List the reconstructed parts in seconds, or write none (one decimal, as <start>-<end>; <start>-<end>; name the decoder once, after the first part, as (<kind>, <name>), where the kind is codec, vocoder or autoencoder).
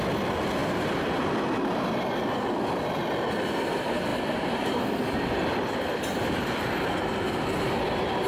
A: 0.6-1.5 (vocoder, BigVGAN v2)